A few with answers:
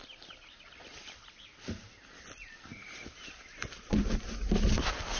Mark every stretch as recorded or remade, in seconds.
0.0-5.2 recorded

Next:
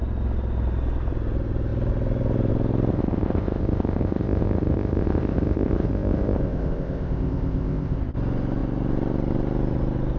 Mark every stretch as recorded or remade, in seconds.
0.0-2.9 recorded; 2.9-8.0 remade; 8.0-10.2 recorded

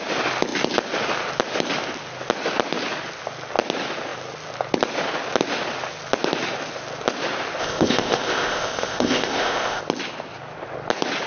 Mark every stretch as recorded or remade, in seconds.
0.0-7.6 recorded; 7.6-9.8 remade; 9.8-11.3 recorded

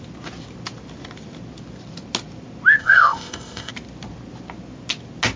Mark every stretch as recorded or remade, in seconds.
0.0-2.8 recorded; 2.8-3.7 remade; 3.7-5.4 recorded

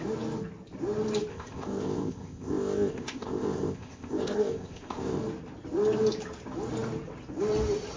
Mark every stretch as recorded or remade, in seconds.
0.0-1.3 recorded; 1.3-5.2 remade; 5.2-8.0 recorded

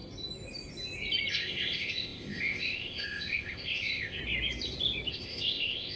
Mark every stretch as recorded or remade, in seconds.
0.0-1.3 recorded; 1.3-4.2 remade; 4.2-5.1 recorded; 5.1-6.0 remade

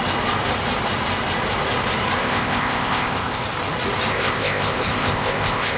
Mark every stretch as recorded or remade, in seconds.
0.0-2.2 recorded; 2.2-3.4 remade; 3.4-4.1 recorded; 4.1-5.8 remade